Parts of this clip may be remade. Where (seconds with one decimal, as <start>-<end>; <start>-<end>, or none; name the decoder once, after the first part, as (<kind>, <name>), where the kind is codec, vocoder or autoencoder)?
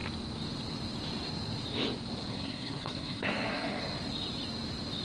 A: 2.3-3.8 (codec, SNAC)